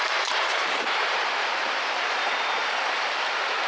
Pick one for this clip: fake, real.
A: fake